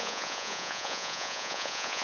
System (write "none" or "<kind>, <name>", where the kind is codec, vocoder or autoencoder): vocoder, Vocos